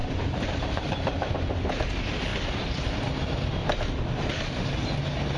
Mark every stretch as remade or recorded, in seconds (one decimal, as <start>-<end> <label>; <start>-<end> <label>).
0.0-1.3 remade; 1.3-2.3 recorded; 2.3-3.1 remade; 3.1-3.6 recorded; 3.6-4.3 remade; 4.3-5.4 recorded